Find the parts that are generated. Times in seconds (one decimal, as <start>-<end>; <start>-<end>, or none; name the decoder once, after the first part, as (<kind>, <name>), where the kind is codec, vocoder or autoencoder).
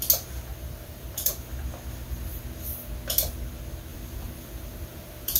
0.5-1.3 (vocoder, BigVGAN v2); 3.9-5.4